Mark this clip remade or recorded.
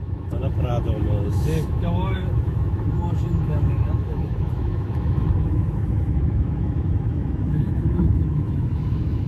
remade